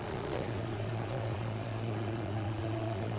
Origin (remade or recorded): remade